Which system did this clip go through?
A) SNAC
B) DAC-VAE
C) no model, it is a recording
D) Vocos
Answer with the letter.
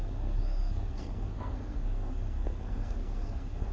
A